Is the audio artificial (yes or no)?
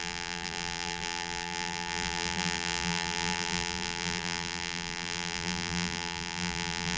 yes